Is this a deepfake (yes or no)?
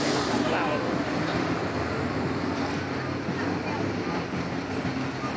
no